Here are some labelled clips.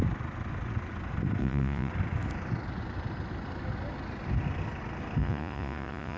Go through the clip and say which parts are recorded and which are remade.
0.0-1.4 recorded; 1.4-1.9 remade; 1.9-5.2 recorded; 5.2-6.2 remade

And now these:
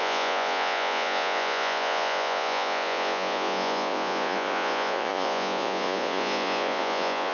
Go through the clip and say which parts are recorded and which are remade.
0.0-7.3 remade

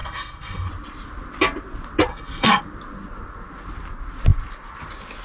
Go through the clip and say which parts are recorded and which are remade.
0.0-0.7 remade; 0.7-2.1 recorded; 2.1-2.6 remade; 2.6-5.2 recorded